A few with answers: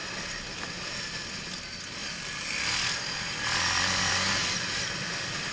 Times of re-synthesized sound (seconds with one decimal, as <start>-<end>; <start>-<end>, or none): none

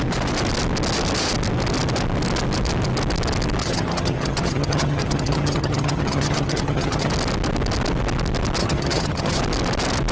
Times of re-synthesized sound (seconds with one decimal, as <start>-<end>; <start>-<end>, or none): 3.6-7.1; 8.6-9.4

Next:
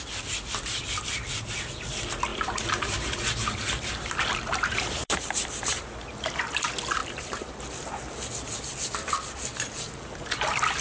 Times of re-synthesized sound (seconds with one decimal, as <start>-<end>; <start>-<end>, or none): 2.3-5.8; 7.0-7.6

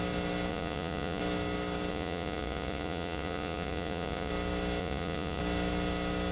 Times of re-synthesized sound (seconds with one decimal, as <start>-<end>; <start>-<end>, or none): 0.5-1.2; 1.9-4.3; 4.8-5.4

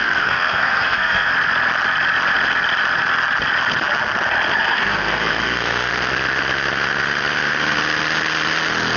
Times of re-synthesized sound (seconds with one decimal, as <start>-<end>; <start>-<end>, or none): 0.0-1.3; 4.6-5.9

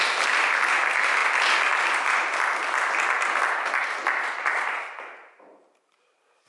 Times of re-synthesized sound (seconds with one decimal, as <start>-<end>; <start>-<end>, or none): none

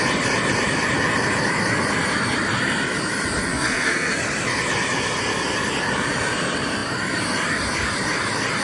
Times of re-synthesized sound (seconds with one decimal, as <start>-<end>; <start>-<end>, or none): 3.5-4.2